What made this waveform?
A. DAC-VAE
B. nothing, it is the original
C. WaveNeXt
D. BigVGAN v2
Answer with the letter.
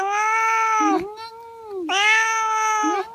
B